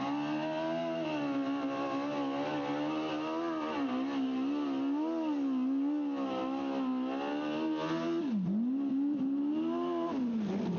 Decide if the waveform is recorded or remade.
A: recorded